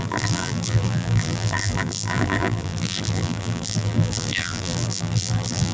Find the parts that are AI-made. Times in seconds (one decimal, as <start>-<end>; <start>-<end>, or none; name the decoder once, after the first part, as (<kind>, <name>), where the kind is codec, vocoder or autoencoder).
0.0-5.7 (vocoder, BigVGAN v2)